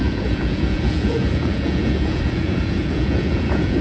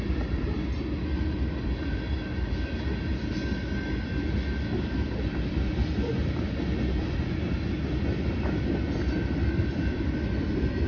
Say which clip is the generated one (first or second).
first